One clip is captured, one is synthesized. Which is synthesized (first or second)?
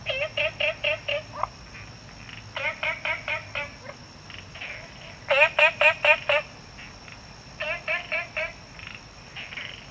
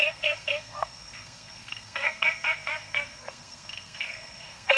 second